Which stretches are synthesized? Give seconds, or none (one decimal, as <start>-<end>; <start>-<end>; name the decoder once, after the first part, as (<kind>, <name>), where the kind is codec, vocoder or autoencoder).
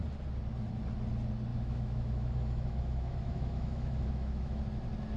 1.5-4.6 (autoencoder, DAC-VAE)